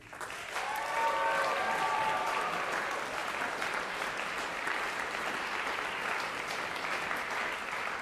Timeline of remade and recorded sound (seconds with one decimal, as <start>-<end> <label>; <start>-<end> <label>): 0.0-8.0 recorded